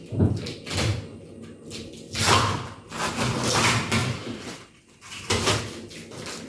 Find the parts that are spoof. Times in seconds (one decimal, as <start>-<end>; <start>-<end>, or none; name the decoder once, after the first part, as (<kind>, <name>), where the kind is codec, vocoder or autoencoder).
4.0-5.1 (vocoder, BigVGAN v2)